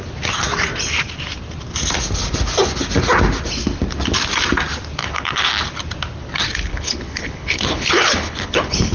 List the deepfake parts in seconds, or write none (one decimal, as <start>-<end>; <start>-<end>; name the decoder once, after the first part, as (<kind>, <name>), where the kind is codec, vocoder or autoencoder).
5.0-5.5 (codec, HILCodec); 6.7-8.9